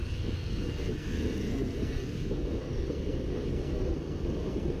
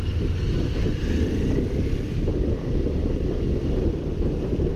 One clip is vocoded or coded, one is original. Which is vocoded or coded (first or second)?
first